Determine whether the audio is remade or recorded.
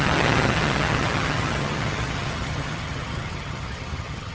remade